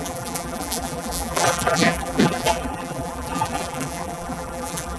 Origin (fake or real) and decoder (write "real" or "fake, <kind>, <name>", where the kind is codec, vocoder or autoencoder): fake, vocoder, BigVGAN v2